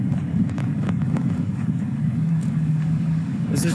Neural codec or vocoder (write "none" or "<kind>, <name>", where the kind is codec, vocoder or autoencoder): codec, DAC